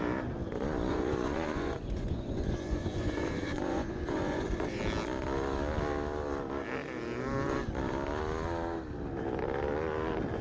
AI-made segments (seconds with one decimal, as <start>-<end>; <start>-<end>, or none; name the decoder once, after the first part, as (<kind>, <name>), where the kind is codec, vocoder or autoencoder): 0.9-4.8 (vocoder, Vocos)